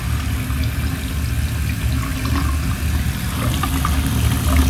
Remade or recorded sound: recorded